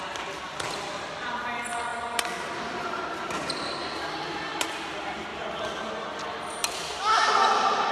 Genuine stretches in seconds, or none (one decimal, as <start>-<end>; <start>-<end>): 0.0-7.9